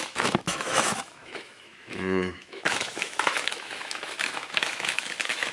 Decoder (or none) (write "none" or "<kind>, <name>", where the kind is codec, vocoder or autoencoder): autoencoder, DAC-VAE